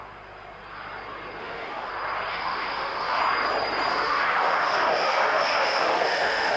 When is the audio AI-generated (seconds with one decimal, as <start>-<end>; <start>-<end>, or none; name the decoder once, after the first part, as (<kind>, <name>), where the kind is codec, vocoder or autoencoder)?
1.4-1.9 (autoencoder, DAC-VAE); 2.3-3.2; 3.9-6.6